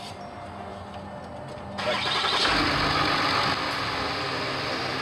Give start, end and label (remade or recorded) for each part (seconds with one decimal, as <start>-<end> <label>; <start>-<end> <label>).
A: 0.0-5.0 recorded

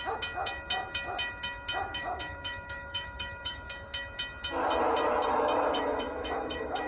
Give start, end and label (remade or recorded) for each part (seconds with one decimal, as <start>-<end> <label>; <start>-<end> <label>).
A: 0.0-1.9 recorded; 1.9-3.7 remade; 3.7-5.3 recorded; 5.3-6.9 remade